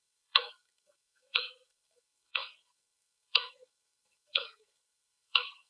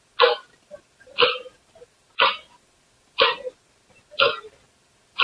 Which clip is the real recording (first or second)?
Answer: second